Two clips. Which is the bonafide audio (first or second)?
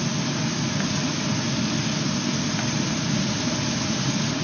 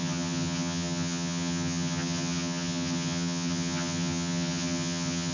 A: first